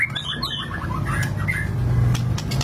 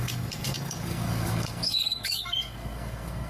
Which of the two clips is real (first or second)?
first